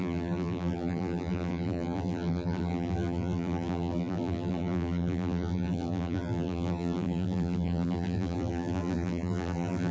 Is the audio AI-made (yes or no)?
yes